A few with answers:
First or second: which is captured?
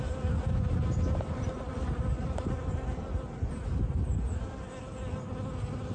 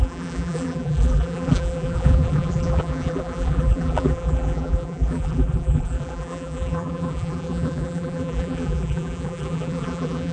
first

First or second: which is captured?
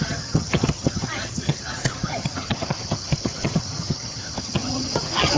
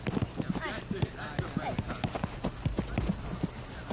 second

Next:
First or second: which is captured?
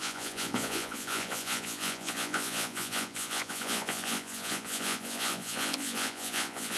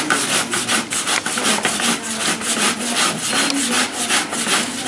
second